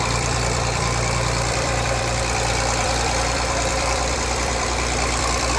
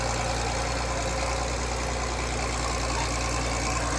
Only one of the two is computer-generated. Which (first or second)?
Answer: first